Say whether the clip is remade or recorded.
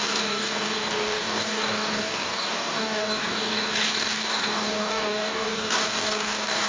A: remade